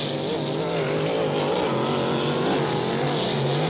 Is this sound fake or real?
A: real